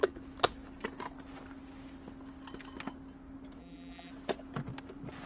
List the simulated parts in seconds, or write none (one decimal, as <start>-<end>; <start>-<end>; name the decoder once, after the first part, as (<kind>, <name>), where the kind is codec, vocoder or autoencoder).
3.6-4.1 (vocoder, BigVGAN v2)